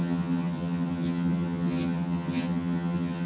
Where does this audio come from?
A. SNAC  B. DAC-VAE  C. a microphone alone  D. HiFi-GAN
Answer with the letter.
D